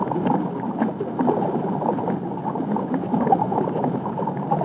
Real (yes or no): yes